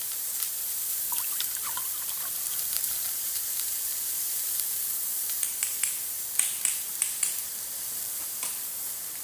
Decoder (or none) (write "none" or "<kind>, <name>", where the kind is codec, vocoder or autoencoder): vocoder, BigVGAN v2